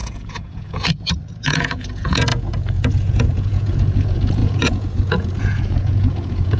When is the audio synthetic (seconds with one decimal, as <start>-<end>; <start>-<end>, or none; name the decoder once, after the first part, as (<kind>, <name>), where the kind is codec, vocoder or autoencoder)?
0.0-6.6 (vocoder, Vocos)